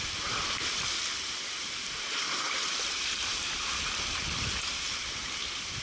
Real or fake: fake